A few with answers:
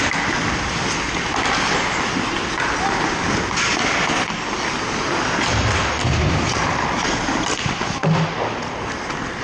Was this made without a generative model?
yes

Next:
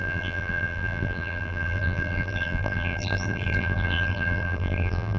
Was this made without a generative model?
no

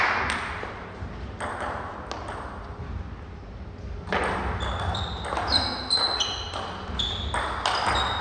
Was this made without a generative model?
yes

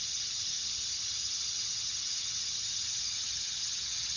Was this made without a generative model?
no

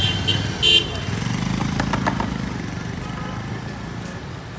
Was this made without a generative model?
yes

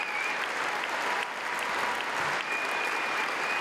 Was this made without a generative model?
yes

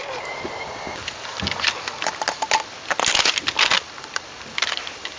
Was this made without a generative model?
yes